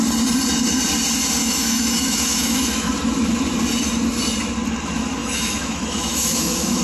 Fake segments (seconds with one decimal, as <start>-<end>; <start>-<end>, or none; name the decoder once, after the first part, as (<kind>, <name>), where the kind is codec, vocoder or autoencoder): 1.4-2.9 (autoencoder, DAC-VAE); 5.2-6.8